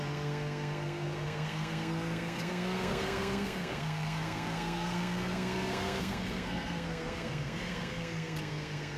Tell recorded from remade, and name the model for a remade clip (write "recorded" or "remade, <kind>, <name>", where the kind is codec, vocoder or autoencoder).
remade, codec, SNAC